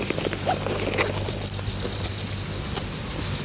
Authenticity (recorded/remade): recorded